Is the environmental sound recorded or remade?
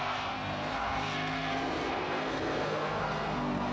remade